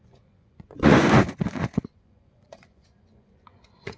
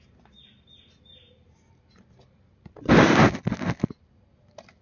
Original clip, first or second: second